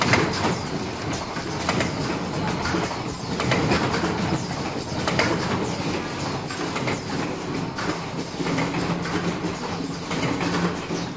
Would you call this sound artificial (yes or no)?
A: no